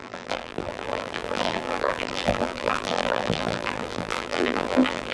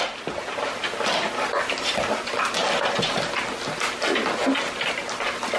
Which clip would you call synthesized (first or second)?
first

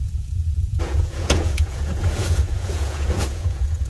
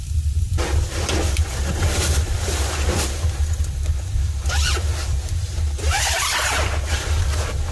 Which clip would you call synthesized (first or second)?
first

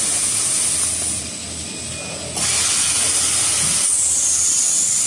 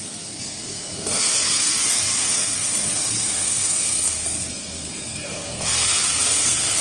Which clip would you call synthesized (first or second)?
second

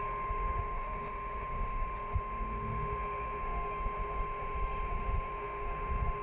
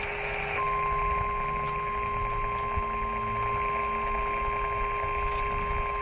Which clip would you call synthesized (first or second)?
first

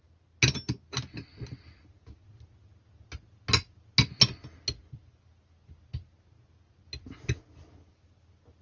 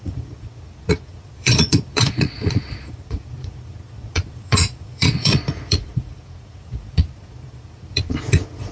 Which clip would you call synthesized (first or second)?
second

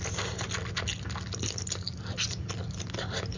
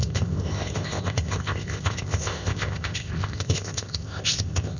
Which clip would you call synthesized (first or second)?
second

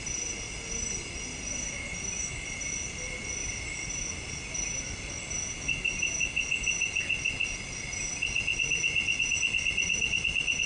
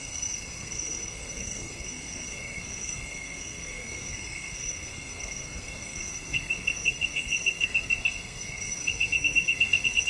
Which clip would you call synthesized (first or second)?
second